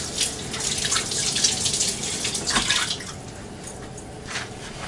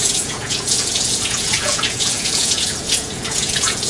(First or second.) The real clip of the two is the first